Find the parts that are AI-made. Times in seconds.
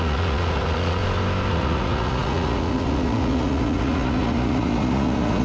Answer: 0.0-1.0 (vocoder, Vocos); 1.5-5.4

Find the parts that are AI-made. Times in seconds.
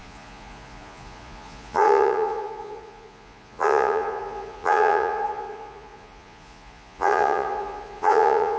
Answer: 0.0-8.6 (vocoder, Vocos)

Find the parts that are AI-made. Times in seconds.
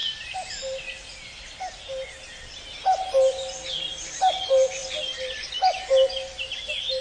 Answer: none